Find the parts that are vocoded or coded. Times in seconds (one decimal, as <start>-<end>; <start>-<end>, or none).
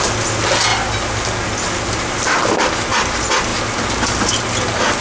none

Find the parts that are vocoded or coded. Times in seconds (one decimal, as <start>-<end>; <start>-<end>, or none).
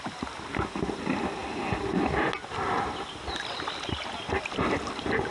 none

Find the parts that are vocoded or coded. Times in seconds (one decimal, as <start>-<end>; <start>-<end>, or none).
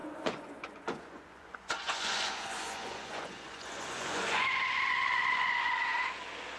0.0-5.9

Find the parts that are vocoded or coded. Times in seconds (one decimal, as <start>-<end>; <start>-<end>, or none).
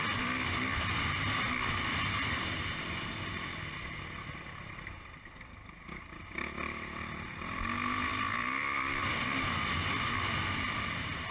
none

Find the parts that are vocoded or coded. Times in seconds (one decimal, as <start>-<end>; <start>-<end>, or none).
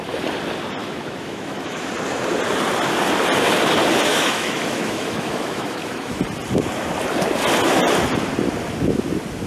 0.8-1.9; 4.1-6.2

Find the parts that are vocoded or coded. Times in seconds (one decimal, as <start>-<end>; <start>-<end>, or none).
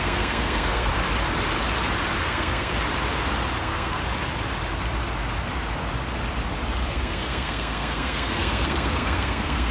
0.0-0.9; 2.2-2.7; 3.6-4.0; 6.9-9.7